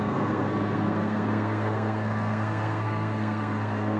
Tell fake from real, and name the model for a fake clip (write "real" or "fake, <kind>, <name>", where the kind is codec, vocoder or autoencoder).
fake, codec, SNAC